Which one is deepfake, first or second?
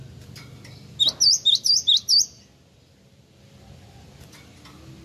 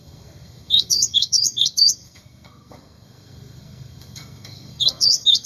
second